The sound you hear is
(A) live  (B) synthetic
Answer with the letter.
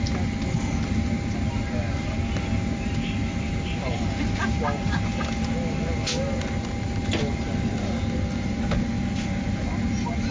A